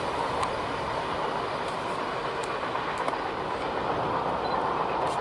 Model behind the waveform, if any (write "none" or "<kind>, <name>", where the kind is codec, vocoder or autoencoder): none